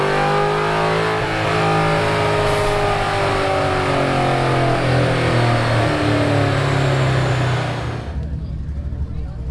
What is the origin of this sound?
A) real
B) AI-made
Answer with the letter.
A